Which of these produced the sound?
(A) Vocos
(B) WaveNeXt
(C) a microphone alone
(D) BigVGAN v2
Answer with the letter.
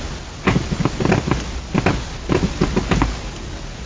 C